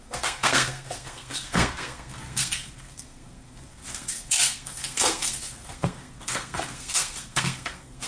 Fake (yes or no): yes